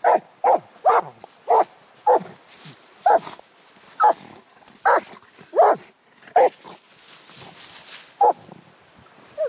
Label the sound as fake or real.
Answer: real